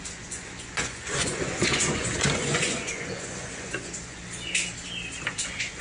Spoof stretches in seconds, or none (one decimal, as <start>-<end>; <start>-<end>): 0.0-4.2; 5.3-5.8